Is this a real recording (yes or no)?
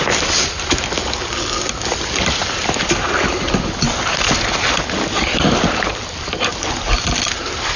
yes